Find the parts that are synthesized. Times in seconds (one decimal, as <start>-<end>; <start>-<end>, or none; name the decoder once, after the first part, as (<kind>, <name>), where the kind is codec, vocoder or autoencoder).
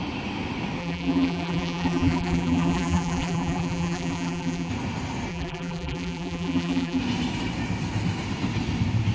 0.8-4.7 (vocoder, BigVGAN v2); 5.3-7.0